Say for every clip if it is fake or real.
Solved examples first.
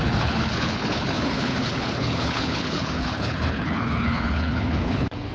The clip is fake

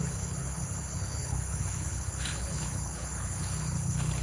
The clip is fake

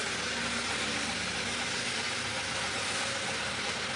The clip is real